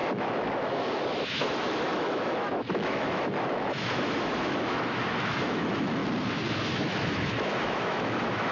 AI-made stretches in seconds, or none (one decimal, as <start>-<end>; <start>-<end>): 0.0-6.0; 6.7-8.5